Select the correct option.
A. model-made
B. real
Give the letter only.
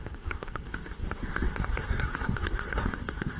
A